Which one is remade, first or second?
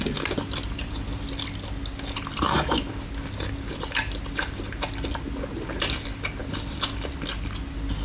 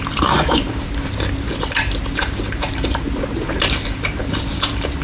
second